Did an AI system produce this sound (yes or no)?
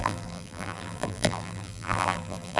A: yes